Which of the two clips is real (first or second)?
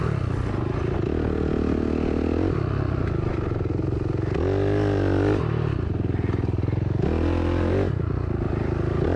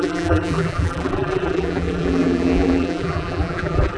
first